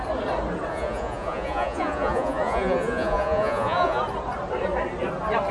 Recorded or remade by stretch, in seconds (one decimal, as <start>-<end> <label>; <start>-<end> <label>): 0.0-0.7 recorded; 0.7-4.0 remade; 4.0-5.5 recorded